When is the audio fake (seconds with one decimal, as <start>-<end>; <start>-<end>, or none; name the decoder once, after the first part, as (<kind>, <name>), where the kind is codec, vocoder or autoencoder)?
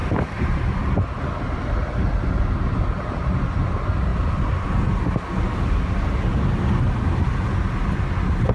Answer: 0.0-2.0 (vocoder, BigVGAN v2); 4.1-4.7